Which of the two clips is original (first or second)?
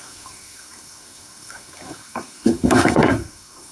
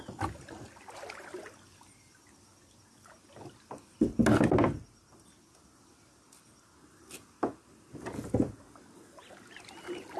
second